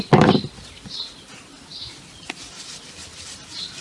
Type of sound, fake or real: real